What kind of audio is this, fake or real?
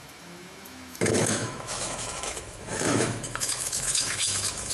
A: fake